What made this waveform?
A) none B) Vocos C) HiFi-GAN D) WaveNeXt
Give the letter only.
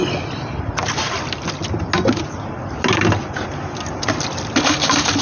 A